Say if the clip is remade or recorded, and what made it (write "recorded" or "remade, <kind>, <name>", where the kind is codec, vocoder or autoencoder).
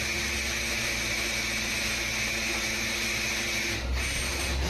recorded